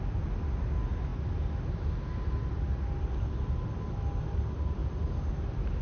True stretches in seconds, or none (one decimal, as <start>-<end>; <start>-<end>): 0.0-5.8